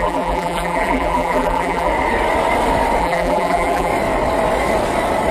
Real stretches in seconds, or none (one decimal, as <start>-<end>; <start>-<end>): 1.9-3.0; 3.9-5.3